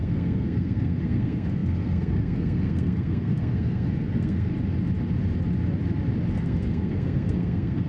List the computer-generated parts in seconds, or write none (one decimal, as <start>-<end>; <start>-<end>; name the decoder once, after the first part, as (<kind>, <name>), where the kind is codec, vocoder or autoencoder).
0.0-4.5 (codec, SNAC); 6.3-7.9

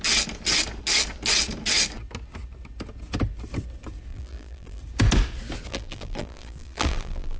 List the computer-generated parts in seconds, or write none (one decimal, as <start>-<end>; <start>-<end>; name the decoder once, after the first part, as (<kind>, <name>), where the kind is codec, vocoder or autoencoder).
4.1-4.8 (vocoder, BigVGAN v2); 5.7-7.4

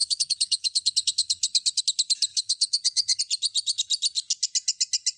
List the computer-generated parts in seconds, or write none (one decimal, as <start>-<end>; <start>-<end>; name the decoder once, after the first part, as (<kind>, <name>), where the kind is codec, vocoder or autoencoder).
0.0-1.8 (codec, HILCodec); 2.3-3.2